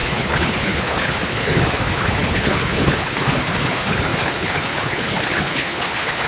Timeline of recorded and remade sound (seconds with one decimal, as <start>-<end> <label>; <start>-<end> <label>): 0.0-6.3 remade